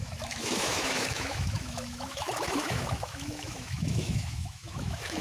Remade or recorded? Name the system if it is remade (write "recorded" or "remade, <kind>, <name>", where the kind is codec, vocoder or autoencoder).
remade, autoencoder, DAC-VAE